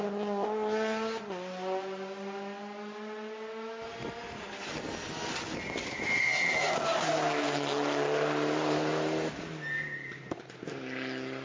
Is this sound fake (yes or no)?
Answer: no